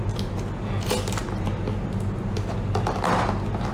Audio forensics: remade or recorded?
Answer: recorded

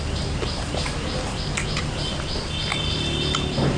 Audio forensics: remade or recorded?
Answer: recorded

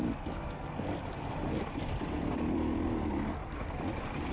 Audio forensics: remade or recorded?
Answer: recorded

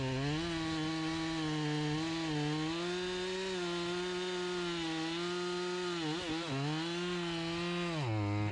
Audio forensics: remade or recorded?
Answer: recorded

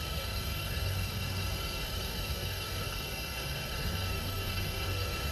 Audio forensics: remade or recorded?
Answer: remade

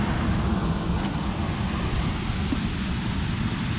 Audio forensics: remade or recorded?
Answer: recorded